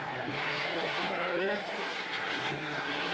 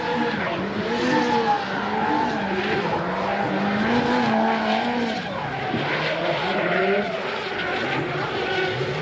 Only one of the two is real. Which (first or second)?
second